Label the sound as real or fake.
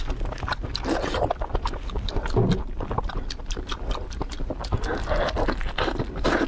real